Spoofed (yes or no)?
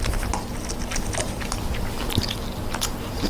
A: no